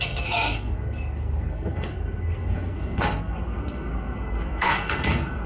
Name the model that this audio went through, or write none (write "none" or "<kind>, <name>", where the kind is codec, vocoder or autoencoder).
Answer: codec, SNAC